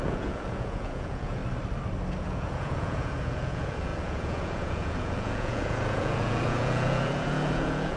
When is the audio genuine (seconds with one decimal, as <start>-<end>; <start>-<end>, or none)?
1.4-2.2